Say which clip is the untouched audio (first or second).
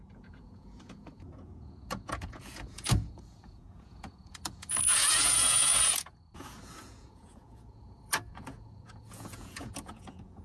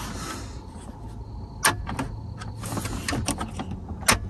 second